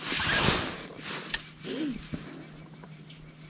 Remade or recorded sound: recorded